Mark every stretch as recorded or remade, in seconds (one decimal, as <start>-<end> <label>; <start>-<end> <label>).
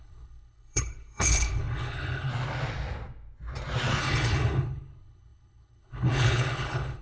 0.0-2.3 remade; 2.3-4.0 recorded; 4.0-7.0 remade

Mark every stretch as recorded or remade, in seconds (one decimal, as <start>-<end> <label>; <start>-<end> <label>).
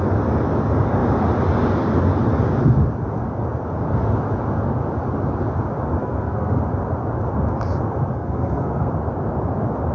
0.0-6.0 recorded; 6.0-6.6 remade; 6.6-8.1 recorded; 8.1-8.9 remade; 8.9-9.9 recorded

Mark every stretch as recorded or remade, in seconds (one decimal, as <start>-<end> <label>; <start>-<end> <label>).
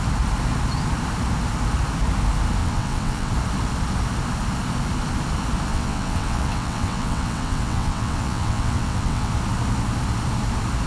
0.0-2.6 recorded; 2.6-3.3 remade; 3.3-5.7 recorded; 5.7-9.3 remade; 9.3-10.9 recorded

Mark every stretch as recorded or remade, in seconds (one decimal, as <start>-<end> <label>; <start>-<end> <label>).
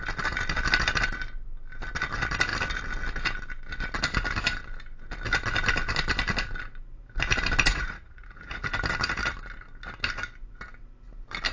0.0-7.7 recorded; 7.7-8.6 remade; 8.6-11.5 recorded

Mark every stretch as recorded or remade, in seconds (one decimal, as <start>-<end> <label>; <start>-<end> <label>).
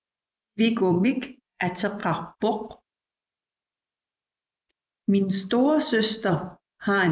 0.0-2.0 remade; 2.0-6.3 recorded; 6.3-7.1 remade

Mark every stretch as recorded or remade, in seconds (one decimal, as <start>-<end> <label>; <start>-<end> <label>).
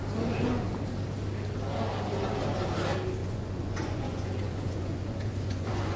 0.0-3.2 recorded; 3.2-6.0 remade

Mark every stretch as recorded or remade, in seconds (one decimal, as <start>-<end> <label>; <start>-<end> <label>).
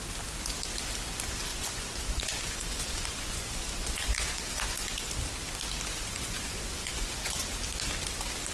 0.0-1.5 recorded; 1.5-5.1 remade; 5.1-5.9 recorded; 5.9-7.4 remade; 7.4-8.5 recorded